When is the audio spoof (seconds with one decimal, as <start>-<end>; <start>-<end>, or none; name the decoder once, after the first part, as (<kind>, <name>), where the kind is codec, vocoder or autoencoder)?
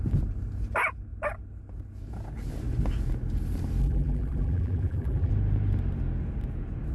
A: 3.8-5.3 (vocoder, BigVGAN v2)